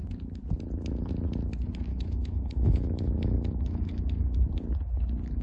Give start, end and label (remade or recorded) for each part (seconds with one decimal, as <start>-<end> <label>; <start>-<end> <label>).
0.0-1.9 recorded; 1.9-4.0 remade; 4.0-5.4 recorded